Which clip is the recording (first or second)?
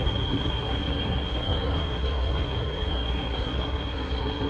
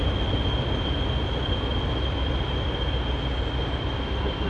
second